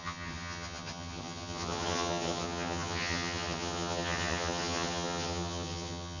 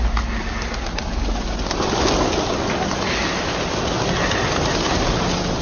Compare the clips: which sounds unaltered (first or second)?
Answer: second